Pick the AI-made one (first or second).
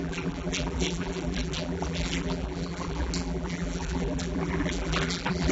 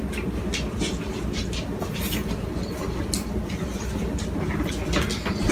first